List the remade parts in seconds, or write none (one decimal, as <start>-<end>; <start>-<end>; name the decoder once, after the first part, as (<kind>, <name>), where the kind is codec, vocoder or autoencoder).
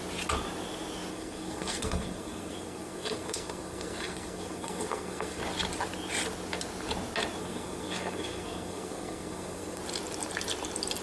1.1-5.4 (codec, SNAC); 7.4-9.8